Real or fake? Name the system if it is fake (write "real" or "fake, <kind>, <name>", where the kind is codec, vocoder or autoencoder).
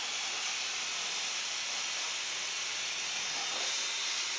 real